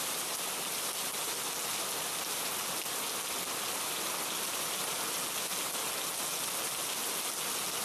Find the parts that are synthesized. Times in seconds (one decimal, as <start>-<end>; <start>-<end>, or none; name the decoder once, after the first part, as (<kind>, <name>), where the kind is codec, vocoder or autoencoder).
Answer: none